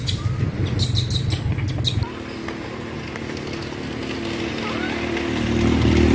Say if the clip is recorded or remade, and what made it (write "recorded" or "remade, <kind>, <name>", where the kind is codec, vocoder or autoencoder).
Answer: recorded